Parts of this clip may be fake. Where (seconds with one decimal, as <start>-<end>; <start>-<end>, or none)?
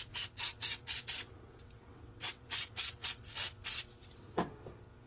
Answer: 0.5-3.3; 3.9-4.5